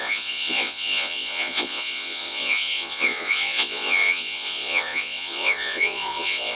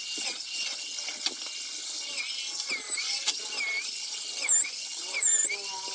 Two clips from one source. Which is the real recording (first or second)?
second